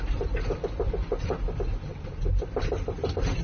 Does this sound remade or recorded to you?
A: recorded